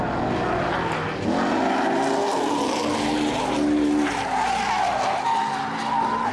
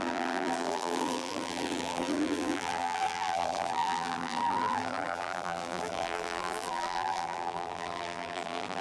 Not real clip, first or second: second